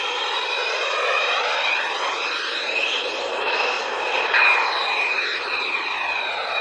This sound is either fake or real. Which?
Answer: real